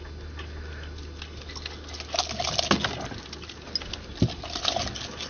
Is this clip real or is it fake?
real